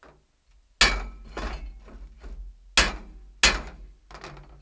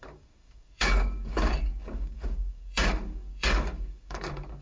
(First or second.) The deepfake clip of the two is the second